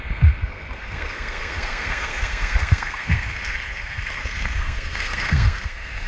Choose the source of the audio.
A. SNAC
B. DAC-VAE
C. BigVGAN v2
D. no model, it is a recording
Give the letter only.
A